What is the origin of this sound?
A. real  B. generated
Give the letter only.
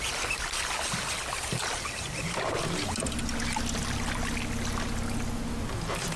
A